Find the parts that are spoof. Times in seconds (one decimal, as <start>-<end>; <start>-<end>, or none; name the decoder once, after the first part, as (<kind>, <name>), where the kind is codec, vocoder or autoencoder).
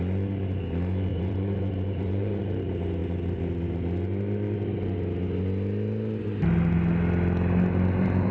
1.1-2.4 (vocoder, BigVGAN v2)